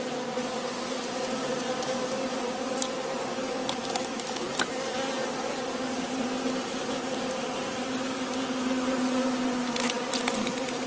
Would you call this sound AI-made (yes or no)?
yes